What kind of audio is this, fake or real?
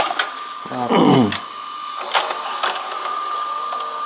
real